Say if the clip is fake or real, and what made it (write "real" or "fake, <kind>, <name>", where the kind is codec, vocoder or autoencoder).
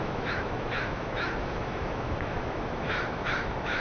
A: fake, autoencoder, DAC-VAE